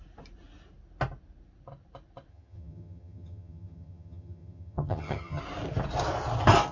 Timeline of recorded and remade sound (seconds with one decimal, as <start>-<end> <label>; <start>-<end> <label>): 0.0-2.3 recorded; 2.3-5.4 remade; 5.4-6.7 recorded